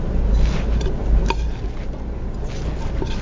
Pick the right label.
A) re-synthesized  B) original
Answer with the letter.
B